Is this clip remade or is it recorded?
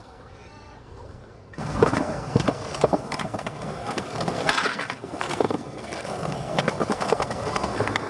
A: remade